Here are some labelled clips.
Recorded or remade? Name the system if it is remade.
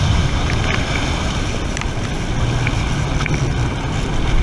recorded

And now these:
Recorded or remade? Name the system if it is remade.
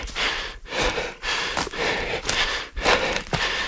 remade, vocoder, BigVGAN v2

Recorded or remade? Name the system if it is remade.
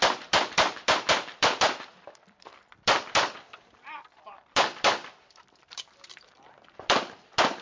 remade, vocoder, BigVGAN v2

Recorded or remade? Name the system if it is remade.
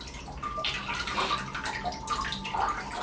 recorded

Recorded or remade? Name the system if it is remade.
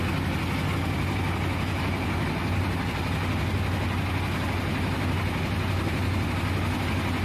recorded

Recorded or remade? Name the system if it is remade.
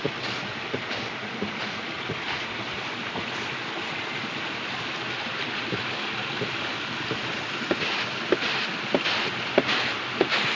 recorded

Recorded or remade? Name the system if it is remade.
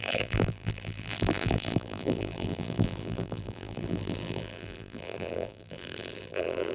remade, vocoder, BigVGAN v2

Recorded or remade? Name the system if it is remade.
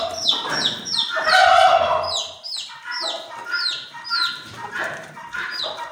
recorded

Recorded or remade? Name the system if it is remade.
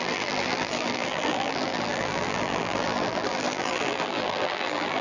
remade, vocoder, BigVGAN v2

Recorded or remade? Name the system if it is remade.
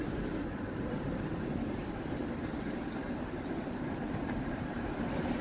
remade, vocoder, BigVGAN v2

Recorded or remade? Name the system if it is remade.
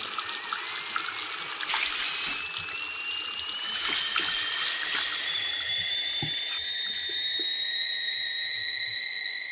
recorded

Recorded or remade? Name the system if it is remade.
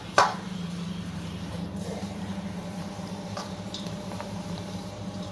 remade, vocoder, BigVGAN v2